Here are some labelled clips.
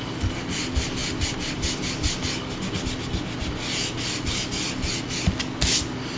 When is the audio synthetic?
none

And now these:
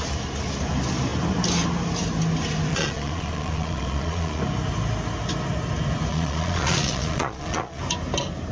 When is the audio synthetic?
2.7-4.4 (vocoder, Vocos); 6.1-7.8

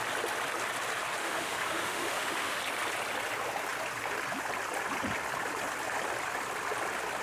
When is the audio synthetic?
1.2-2.6 (autoencoder, DAC-VAE)

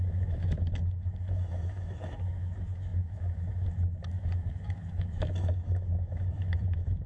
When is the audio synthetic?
0.0-7.1 (autoencoder, DAC-VAE)

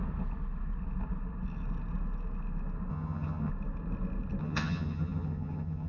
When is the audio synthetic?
2.9-3.5 (vocoder, HiFi-GAN); 4.4-5.9

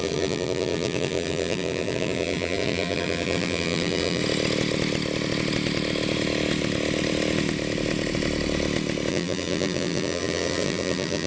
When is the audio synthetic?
0.0-4.2 (vocoder, BigVGAN v2); 9.1-11.3